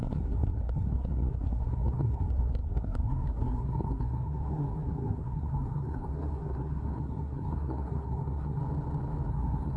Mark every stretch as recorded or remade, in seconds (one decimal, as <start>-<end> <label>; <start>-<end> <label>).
0.0-8.6 remade; 8.6-9.3 recorded; 9.3-9.8 remade